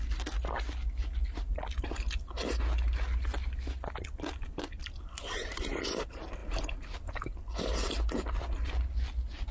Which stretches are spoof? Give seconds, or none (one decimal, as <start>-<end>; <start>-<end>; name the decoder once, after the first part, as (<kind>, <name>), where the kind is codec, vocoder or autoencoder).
none

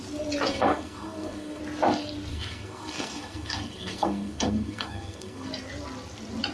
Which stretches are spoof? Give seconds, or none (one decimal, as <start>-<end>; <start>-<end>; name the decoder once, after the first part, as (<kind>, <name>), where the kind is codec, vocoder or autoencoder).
0.5-1.6 (codec, SNAC); 2.3-5.5

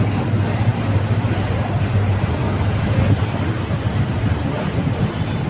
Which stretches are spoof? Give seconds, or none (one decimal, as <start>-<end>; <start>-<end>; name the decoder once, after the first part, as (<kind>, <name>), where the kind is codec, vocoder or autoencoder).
none

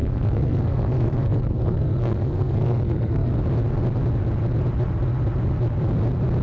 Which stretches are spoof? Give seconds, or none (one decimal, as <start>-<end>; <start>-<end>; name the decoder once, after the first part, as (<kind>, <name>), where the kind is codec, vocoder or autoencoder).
0.0-3.3 (codec, SNAC)

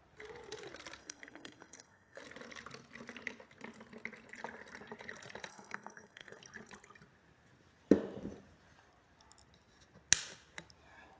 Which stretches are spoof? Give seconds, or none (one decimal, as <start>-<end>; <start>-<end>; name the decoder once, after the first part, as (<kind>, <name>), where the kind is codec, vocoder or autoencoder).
1.0-2.2 (codec, SNAC); 5.5-6.4

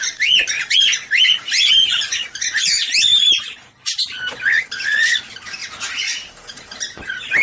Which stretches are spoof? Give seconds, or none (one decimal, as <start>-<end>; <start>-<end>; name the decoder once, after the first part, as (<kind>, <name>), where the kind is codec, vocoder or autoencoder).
none

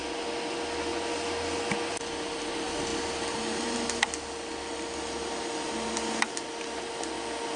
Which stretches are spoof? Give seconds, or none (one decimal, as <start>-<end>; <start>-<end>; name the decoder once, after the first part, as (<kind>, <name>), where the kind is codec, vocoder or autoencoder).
none

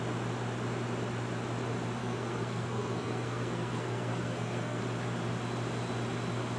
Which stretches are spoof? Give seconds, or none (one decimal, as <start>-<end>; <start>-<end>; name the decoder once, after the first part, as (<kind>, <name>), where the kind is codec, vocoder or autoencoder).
2.0-4.8 (codec, SNAC)